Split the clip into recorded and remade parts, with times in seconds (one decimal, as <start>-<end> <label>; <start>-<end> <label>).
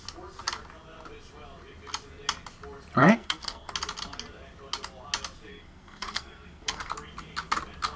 0.0-3.0 recorded; 3.0-3.7 remade; 3.7-5.5 recorded; 5.5-6.9 remade; 6.9-8.0 recorded